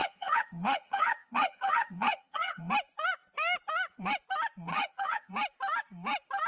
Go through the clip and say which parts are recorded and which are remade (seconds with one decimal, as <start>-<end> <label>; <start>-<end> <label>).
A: 0.0-2.7 remade; 2.7-4.7 recorded; 4.7-5.3 remade; 5.3-6.5 recorded